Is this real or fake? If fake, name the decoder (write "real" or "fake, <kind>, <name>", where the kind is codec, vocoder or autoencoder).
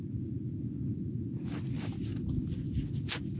real